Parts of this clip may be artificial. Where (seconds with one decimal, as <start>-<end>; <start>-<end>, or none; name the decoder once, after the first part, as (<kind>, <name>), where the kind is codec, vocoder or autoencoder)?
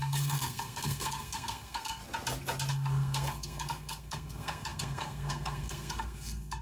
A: 0.0-2.0 (codec, SNAC); 2.7-6.6